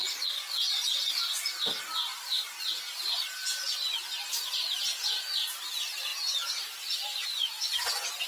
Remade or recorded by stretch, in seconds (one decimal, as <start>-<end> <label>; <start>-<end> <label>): 0.0-8.3 recorded